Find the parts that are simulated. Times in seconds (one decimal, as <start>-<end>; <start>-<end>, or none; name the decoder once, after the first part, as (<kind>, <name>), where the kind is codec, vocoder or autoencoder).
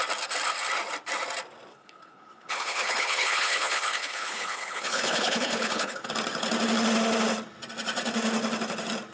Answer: 1.7-6.1 (codec, HILCodec)